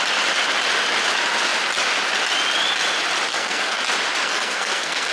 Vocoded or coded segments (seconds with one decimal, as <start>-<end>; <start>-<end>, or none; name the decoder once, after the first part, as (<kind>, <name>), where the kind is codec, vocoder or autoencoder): 3.3-3.8 (codec, SNAC); 4.2-5.1